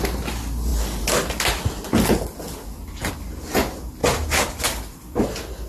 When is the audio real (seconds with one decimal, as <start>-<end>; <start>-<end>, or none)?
0.0-5.7

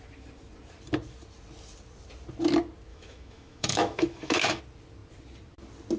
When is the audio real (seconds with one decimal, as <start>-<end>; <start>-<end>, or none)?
0.0-2.9; 4.6-6.0

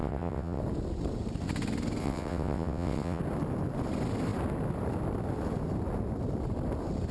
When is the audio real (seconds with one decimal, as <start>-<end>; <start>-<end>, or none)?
0.6-2.0; 3.2-7.1

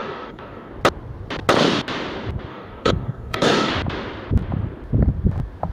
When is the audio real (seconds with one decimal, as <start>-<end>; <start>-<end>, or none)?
0.7-2.5; 3.7-5.7

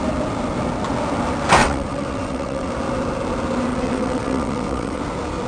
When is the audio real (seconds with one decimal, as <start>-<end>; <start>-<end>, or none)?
0.0-1.6; 2.7-3.7; 5.0-5.5

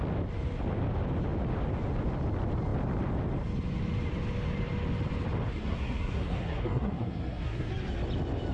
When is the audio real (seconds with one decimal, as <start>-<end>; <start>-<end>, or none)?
0.0-5.5; 7.7-8.5

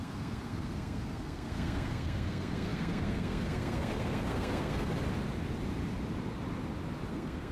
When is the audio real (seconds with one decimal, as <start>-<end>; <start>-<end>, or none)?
4.9-7.1